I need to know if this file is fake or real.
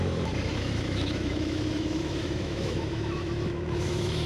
fake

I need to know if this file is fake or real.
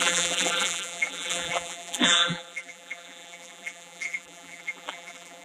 fake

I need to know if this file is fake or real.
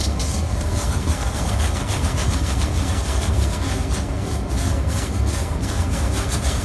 fake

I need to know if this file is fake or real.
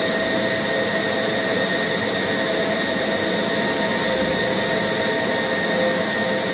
real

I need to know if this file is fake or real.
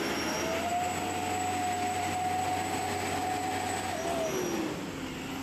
real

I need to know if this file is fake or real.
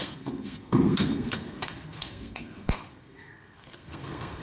fake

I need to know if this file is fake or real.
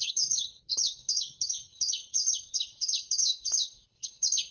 fake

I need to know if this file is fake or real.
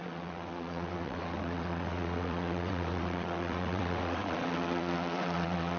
fake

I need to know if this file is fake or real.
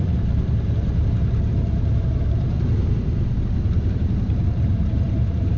fake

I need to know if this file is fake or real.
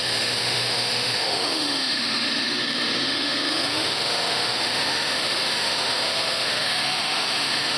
fake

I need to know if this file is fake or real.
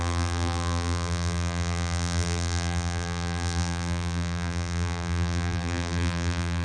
fake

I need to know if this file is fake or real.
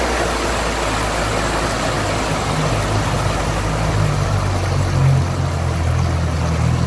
real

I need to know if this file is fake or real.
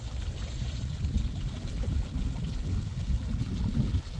real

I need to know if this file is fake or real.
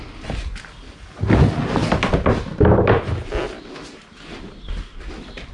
real